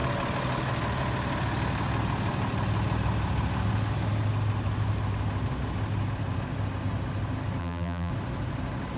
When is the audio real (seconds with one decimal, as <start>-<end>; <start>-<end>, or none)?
0.0-7.6; 8.1-9.0